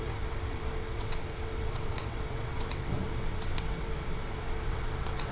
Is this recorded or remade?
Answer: remade